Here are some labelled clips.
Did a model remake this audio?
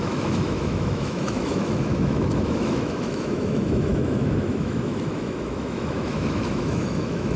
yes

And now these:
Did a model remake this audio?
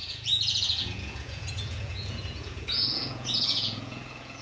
yes